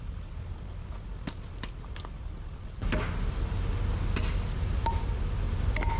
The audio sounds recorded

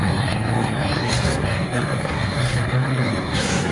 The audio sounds remade